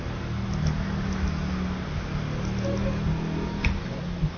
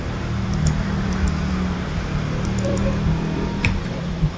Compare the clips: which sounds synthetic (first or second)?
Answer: second